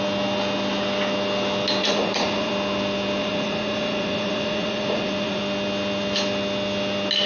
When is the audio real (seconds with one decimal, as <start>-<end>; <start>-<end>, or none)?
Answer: 0.0-1.8; 2.5-3.2; 5.4-7.3